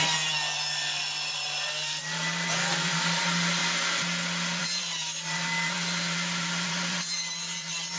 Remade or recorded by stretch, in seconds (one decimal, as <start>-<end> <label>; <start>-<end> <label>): 0.0-3.6 remade; 3.6-4.6 recorded; 4.6-8.0 remade